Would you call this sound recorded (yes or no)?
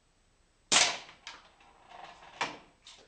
yes